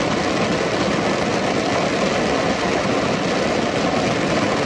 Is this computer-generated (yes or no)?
no